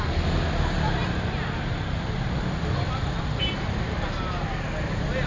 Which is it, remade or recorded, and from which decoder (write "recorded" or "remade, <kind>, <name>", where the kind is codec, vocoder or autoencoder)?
recorded